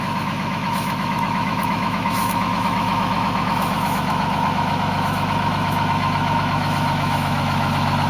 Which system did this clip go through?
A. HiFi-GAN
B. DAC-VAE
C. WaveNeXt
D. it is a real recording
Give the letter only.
B